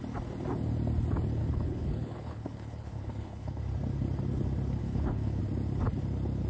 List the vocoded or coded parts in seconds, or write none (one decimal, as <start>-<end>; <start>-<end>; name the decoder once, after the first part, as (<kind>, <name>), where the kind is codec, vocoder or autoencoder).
1.4-3.6 (codec, HILCodec); 4.8-5.4

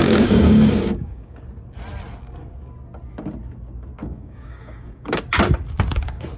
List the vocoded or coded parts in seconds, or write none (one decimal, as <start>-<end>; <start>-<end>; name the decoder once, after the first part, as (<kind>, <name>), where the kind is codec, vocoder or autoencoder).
0.0-1.4 (codec, DAC); 4.0-5.2

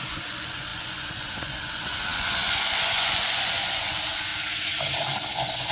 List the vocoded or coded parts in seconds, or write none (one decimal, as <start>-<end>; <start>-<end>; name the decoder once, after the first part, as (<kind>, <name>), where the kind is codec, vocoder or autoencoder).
0.0-4.3 (vocoder, Vocos); 5.3-5.7

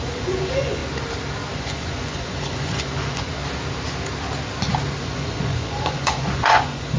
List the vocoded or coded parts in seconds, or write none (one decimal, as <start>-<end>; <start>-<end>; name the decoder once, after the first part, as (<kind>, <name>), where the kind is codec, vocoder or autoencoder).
0.0-0.8 (vocoder, Vocos); 1.5-3.4; 5.0-7.0

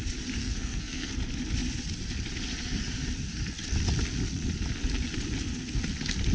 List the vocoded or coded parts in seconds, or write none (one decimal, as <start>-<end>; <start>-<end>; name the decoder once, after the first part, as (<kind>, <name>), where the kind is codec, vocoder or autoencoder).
0.4-1.1 (codec, SNAC)

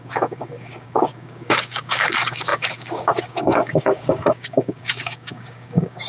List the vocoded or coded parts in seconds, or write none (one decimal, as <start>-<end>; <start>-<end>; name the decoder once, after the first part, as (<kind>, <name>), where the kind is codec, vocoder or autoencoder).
0.0-6.1 (codec, DAC)

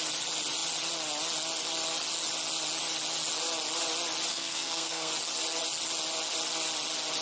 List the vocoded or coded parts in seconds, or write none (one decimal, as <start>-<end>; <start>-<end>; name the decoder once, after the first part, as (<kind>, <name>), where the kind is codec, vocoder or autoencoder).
4.3-5.1 (codec, SNAC)